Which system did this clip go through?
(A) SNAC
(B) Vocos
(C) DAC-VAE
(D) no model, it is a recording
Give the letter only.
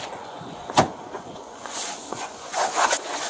B